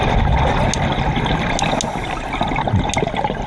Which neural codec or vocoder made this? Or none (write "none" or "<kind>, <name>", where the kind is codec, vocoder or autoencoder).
none